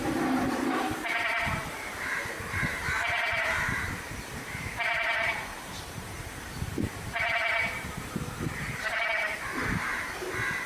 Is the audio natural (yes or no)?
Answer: no